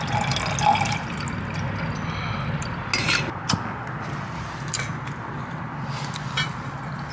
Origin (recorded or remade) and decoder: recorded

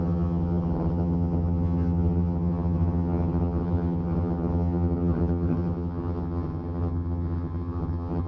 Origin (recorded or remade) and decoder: remade, vocoder, HiFi-GAN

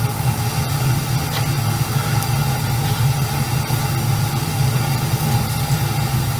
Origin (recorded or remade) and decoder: recorded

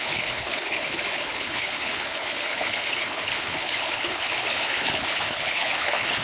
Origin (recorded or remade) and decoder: remade, codec, HILCodec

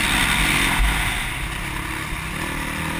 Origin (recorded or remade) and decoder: recorded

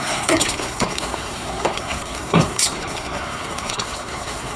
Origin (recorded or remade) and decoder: remade, codec, SNAC